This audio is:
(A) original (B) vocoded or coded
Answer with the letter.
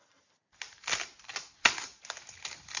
A